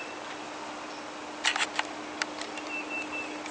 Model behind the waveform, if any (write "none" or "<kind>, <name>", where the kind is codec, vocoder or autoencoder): none